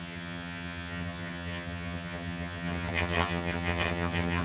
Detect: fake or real fake